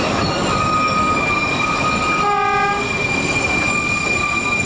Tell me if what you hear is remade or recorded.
recorded